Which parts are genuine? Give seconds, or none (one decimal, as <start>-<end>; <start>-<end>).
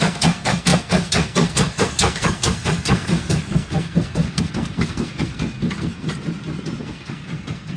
6.1-6.8